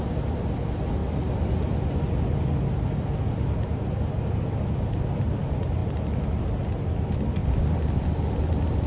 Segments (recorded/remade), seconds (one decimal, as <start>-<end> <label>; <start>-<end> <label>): 0.0-8.9 recorded